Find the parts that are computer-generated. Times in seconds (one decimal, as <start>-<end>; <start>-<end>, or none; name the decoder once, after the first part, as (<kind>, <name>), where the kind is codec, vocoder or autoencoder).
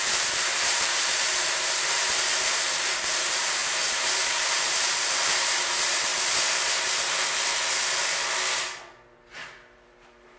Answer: 0.0-6.1 (vocoder, BigVGAN v2); 9.3-10.4